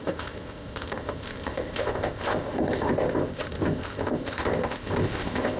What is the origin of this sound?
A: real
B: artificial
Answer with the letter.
B